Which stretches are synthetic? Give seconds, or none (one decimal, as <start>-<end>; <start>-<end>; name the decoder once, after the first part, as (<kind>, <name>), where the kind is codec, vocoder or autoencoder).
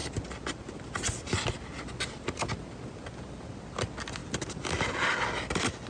none